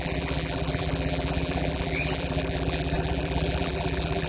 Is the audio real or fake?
fake